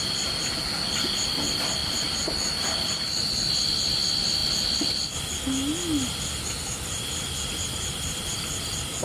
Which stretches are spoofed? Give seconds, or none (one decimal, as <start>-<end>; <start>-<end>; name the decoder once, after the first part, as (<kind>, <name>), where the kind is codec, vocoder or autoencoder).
1.8-3.5 (vocoder, BigVGAN v2); 4.4-5.2